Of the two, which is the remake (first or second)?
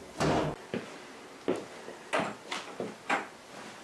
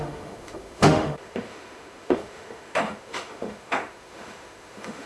second